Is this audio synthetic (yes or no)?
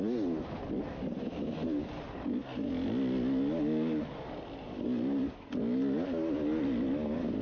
no